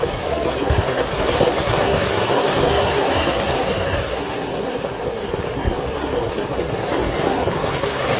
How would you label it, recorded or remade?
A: remade